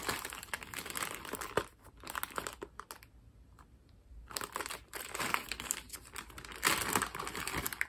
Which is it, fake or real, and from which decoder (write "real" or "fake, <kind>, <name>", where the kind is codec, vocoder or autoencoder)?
real